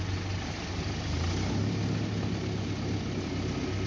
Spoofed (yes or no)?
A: no